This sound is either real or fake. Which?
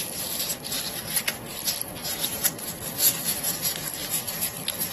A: real